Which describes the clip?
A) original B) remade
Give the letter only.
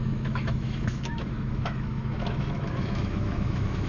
B